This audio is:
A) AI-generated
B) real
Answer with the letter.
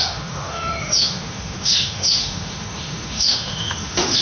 A